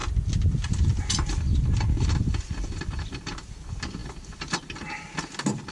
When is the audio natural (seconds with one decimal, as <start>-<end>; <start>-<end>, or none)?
0.0-5.7